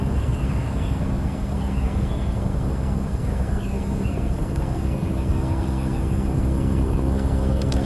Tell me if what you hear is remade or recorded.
remade